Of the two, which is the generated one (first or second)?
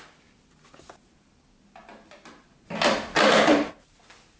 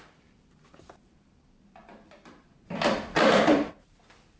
second